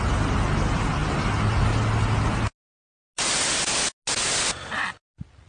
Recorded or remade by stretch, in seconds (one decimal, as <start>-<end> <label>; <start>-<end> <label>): 0.0-5.5 recorded